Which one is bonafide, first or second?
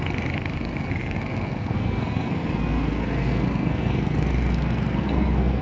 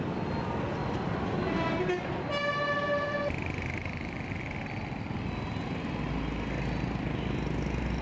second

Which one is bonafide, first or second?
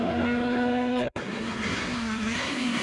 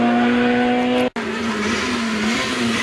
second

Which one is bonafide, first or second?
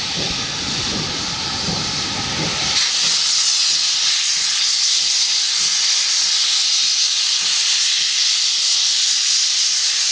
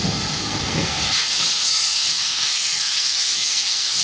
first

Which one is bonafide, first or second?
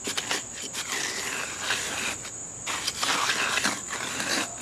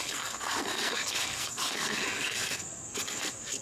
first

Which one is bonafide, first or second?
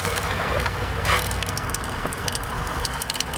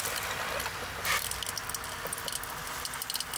second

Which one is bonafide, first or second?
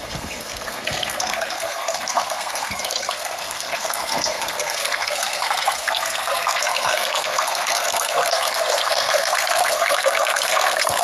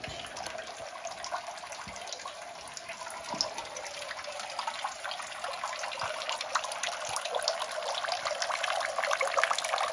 second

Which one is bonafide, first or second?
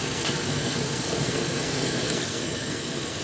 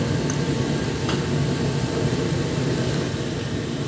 second